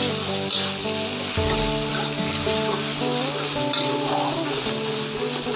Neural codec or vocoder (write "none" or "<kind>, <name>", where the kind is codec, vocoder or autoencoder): none